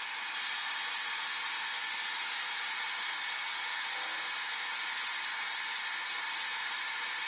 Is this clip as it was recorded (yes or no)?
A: yes